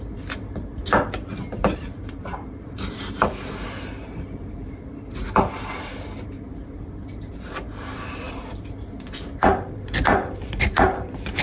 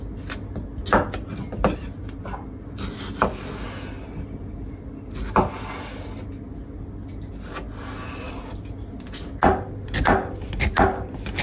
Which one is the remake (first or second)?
first